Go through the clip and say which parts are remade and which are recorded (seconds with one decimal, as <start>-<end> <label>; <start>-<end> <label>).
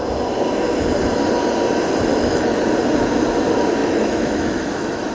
0.0-2.1 recorded; 2.1-2.6 remade; 2.6-3.8 recorded; 3.8-5.1 remade